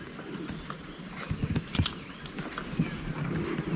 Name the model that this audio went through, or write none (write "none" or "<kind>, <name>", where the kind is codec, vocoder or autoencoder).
none